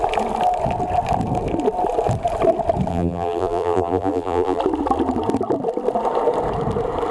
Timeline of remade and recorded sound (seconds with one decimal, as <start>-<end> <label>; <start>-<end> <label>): 0.0-2.9 recorded; 2.9-4.6 remade; 4.6-7.1 recorded